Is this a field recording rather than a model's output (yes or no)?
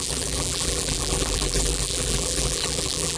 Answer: no